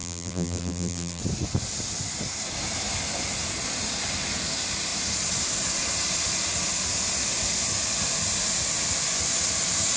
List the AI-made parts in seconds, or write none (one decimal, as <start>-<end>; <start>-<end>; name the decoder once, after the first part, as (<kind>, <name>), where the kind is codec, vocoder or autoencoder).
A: 0.0-1.2 (vocoder, BigVGAN v2)